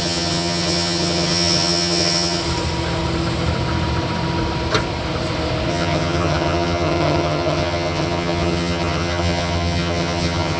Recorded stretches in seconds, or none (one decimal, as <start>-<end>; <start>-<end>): 2.4-5.7